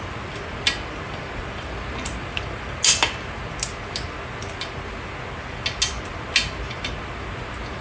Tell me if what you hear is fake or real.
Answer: real